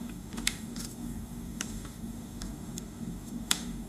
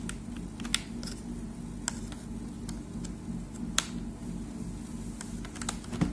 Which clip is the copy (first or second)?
first